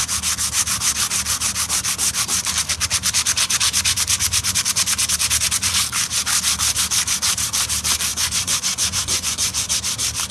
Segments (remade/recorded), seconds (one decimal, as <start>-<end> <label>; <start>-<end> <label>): 0.0-8.1 recorded; 8.1-9.7 remade; 9.7-10.3 recorded